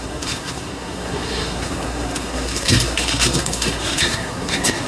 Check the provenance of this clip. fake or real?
fake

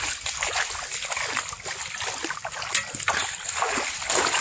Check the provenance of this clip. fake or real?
real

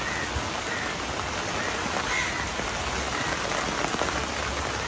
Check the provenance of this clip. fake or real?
real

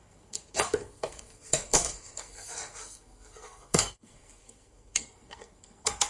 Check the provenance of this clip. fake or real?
fake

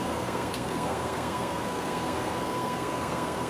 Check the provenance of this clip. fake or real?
fake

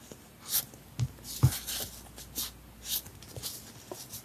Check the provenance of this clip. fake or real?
real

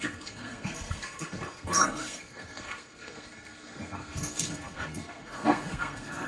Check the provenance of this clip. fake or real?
fake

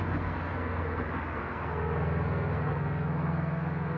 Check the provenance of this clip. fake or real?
fake